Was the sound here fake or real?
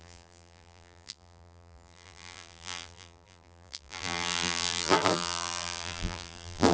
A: fake